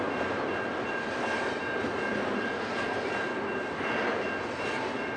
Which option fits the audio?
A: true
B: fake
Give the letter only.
A